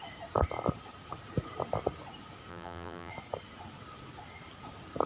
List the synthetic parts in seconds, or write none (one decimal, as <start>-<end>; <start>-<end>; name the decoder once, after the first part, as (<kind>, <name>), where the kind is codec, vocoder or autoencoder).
2.5-3.1 (vocoder, BigVGAN v2)